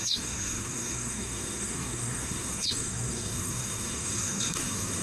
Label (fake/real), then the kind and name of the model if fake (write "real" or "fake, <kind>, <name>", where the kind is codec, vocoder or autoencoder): fake, codec, SNAC